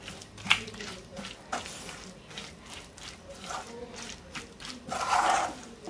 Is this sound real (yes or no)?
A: yes